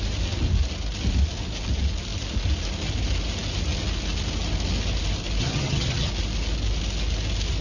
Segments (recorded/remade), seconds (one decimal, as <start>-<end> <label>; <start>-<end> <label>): 0.0-5.4 recorded; 5.4-6.1 remade; 6.1-7.6 recorded